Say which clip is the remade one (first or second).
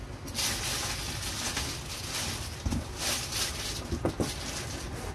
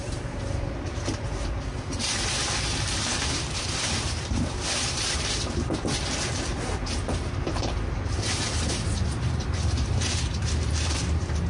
second